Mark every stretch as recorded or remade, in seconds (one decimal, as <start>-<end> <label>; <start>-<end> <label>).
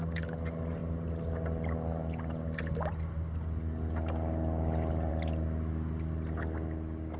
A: 0.0-7.2 recorded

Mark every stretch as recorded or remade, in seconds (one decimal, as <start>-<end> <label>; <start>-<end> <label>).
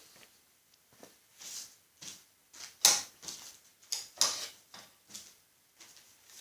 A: 0.0-6.4 recorded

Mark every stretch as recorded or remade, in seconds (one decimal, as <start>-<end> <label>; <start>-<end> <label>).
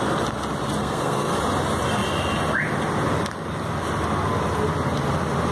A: 0.0-0.8 recorded; 0.8-1.4 remade; 1.4-5.5 recorded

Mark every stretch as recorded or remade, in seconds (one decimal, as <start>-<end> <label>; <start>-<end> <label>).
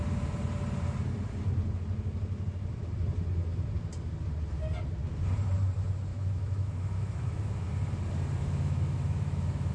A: 0.0-6.1 recorded; 6.1-7.7 remade; 7.7-8.4 recorded; 8.4-9.7 remade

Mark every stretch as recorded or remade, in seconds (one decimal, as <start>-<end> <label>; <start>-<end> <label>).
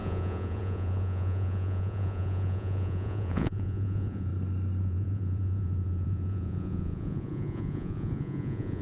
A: 0.0-4.3 remade; 4.3-4.8 recorded; 4.8-8.8 remade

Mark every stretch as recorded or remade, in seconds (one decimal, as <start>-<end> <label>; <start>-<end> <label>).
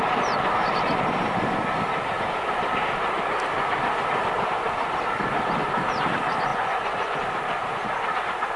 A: 0.0-6.5 recorded; 6.5-7.2 remade; 7.2-8.6 recorded